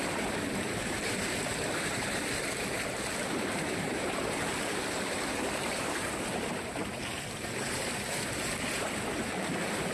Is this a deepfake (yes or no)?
yes